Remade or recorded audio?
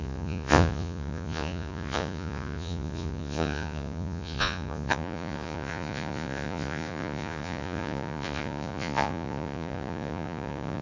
remade